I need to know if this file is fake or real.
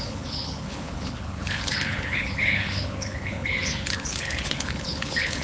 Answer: fake